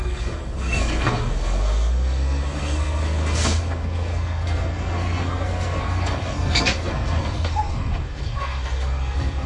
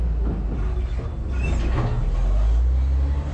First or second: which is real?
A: second